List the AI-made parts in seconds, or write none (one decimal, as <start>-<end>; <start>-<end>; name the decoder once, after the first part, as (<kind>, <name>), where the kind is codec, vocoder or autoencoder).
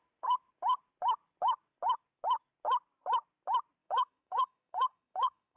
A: 3.8-5.6 (codec, DAC)